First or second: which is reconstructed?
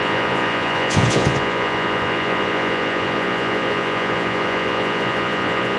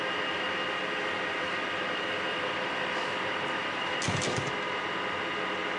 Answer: first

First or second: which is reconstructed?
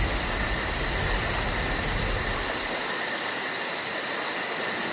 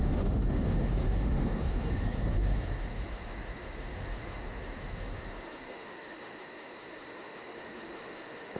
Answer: second